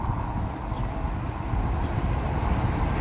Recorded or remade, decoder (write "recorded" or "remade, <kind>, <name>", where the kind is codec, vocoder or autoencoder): recorded